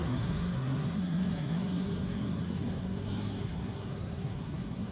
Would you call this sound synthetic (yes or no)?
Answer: yes